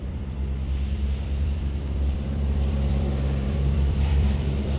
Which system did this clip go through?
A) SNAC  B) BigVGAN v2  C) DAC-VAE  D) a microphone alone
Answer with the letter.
B